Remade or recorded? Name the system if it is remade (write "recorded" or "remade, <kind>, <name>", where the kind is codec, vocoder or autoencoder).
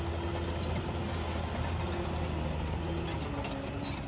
recorded